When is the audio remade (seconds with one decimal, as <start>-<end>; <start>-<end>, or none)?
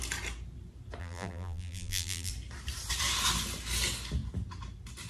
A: 1.0-2.3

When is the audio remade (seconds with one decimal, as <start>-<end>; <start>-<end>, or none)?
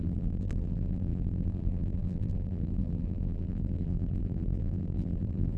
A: 0.0-5.6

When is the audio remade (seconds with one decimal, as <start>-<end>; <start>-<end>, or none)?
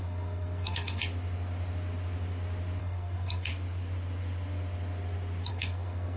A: 0.0-1.0; 2.8-3.5; 5.5-6.2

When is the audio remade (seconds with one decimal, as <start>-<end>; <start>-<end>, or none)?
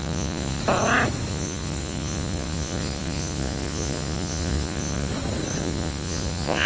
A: 0.0-0.6; 1.3-5.1; 5.6-6.7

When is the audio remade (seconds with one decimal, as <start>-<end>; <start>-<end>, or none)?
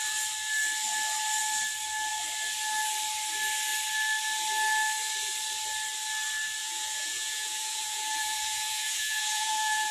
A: 6.6-9.9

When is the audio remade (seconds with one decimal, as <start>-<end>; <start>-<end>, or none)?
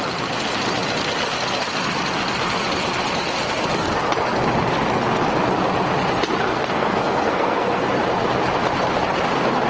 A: 6.5-7.9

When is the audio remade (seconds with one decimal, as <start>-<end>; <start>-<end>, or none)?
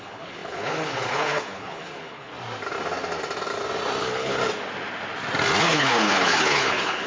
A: 0.0-2.3; 4.0-4.4; 5.6-7.1